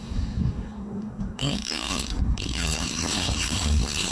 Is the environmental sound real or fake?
fake